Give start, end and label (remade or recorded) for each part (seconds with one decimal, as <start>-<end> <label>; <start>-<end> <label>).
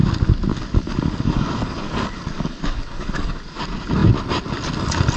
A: 0.0-0.5 recorded; 0.5-3.6 remade; 3.6-5.2 recorded